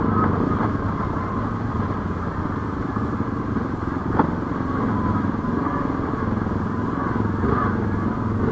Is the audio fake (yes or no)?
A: no